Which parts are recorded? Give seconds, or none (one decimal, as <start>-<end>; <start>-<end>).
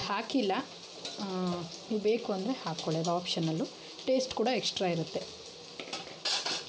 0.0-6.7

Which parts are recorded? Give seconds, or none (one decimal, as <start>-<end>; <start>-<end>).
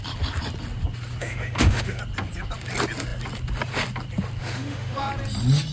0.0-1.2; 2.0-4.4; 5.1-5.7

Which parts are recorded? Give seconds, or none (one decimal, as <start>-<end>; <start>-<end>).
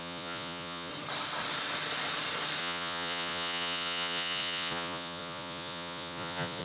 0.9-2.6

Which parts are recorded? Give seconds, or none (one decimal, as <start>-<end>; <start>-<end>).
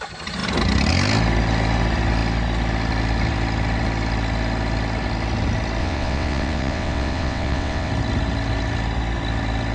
0.0-5.8; 7.9-9.7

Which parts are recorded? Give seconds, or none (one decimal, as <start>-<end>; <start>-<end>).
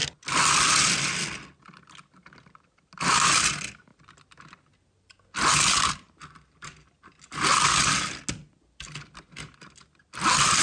0.0-10.6